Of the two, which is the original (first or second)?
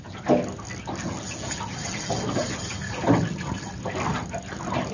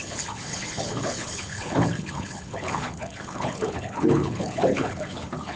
first